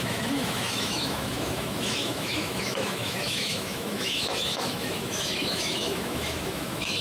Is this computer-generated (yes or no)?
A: yes